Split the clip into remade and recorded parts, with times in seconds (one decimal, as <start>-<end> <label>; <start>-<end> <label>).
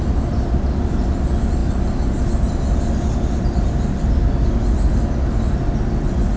0.0-6.4 recorded